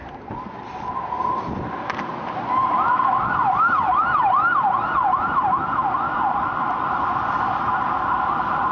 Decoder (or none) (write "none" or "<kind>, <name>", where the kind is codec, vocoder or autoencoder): none